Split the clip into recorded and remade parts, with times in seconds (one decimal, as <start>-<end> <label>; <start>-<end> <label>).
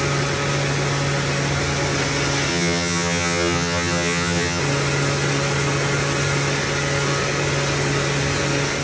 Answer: 0.0-2.5 recorded; 2.5-4.6 remade; 4.6-8.8 recorded